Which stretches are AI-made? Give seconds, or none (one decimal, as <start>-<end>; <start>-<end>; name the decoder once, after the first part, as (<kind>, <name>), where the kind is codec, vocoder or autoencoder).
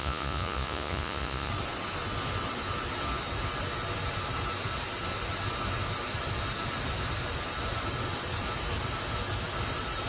0.0-1.5 (vocoder, Vocos)